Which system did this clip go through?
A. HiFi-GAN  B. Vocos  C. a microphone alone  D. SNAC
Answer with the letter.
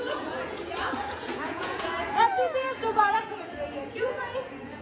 B